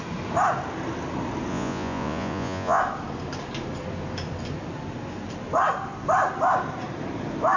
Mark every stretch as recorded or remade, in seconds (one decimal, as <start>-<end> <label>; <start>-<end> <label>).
0.0-1.5 recorded; 1.5-2.8 remade; 2.8-7.6 recorded